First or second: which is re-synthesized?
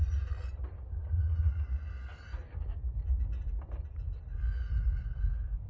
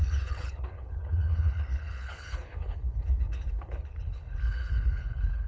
second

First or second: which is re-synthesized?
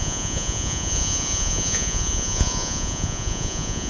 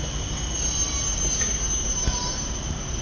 first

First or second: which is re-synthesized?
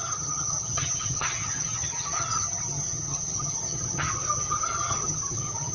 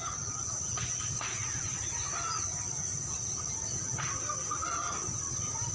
first